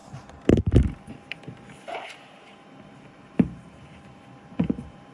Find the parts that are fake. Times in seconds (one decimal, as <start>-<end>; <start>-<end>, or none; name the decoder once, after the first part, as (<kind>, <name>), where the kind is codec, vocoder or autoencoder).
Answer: 0.0-5.1 (vocoder, BigVGAN v2)